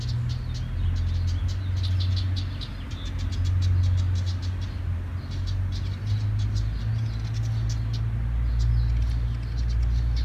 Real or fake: real